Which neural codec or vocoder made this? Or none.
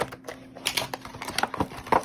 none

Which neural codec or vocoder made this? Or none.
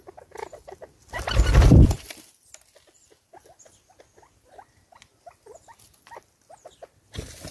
none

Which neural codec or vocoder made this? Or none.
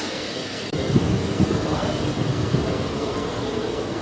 codec, SNAC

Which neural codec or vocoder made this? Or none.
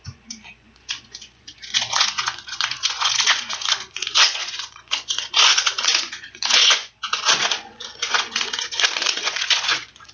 vocoder, Vocos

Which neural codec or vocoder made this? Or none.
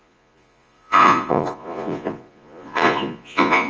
vocoder, Vocos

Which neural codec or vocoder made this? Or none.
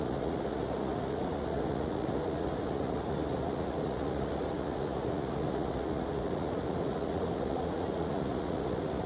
vocoder, Vocos